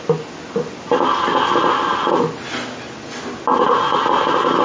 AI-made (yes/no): no